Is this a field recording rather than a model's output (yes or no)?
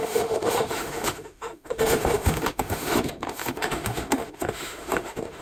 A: no